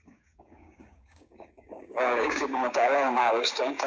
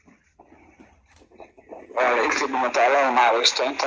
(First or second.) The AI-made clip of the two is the first